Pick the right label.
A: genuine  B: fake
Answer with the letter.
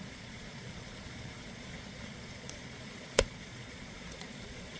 B